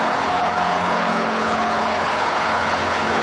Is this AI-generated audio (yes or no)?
yes